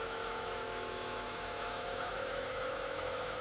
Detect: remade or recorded remade